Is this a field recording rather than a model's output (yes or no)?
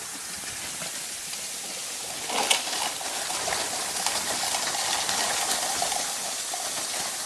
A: yes